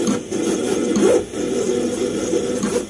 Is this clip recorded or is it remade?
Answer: recorded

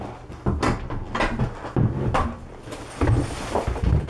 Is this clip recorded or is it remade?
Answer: recorded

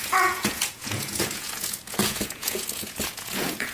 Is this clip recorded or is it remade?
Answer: remade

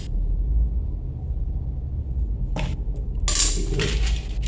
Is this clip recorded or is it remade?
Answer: recorded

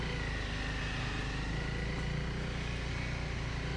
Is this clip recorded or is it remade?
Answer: recorded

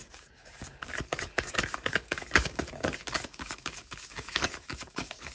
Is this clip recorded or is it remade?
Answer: remade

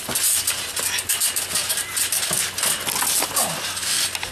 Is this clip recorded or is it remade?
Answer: recorded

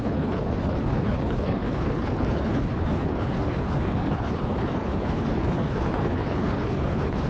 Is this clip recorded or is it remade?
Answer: remade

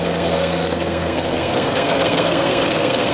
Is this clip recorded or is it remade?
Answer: remade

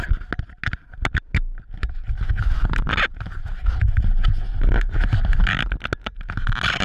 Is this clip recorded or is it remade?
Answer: recorded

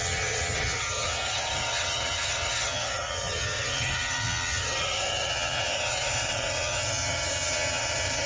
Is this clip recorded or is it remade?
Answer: remade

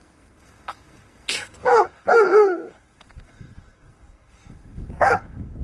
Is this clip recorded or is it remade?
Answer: remade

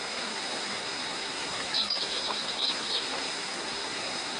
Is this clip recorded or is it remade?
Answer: remade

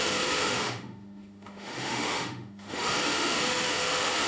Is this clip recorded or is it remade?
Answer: remade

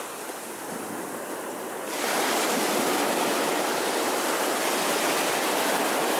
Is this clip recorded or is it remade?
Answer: recorded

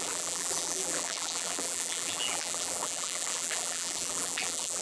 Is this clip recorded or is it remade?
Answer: remade